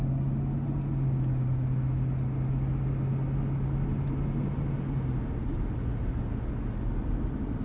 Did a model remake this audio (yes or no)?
no